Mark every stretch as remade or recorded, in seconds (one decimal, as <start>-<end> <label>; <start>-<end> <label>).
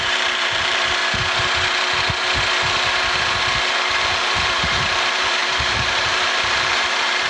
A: 0.0-1.0 remade; 1.0-4.1 recorded; 4.1-7.3 remade